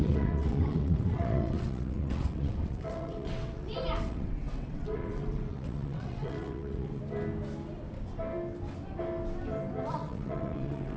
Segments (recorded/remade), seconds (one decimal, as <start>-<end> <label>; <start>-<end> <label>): 0.0-7.0 remade; 7.0-9.9 recorded; 9.9-11.0 remade